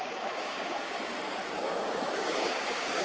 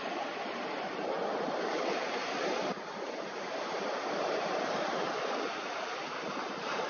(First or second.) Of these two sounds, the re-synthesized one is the first